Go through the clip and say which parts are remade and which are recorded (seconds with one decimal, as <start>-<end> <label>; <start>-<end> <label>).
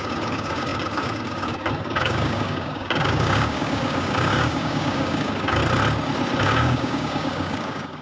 0.0-5.6 remade; 5.6-6.4 recorded; 6.4-8.0 remade